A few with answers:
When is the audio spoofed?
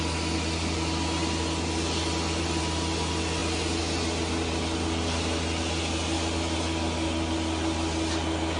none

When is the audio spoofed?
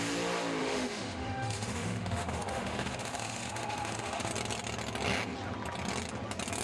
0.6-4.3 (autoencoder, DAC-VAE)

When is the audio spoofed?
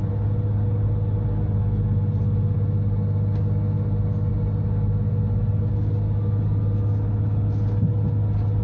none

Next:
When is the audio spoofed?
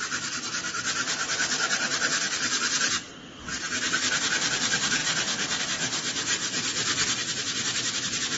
none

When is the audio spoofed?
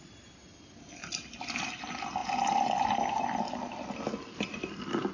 1.0-1.7 (vocoder, BigVGAN v2)